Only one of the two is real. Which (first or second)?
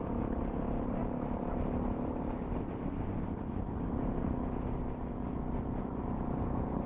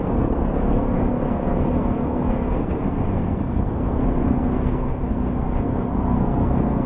first